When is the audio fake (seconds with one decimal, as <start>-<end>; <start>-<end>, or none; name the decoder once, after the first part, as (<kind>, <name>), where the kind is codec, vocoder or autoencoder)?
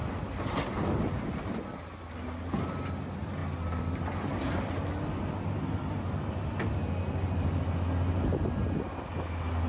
none